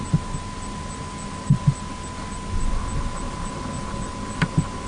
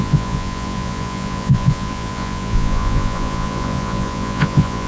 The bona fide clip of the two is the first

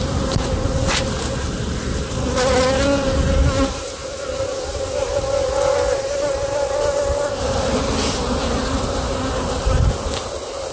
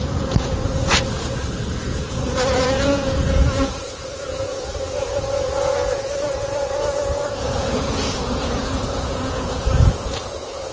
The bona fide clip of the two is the first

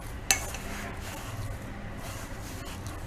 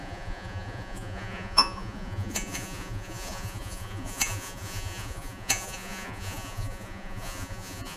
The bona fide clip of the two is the first